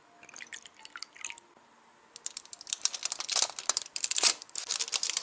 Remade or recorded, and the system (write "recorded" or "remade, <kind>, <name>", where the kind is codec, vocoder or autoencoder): recorded